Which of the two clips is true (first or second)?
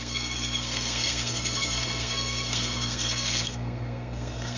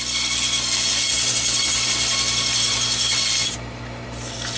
second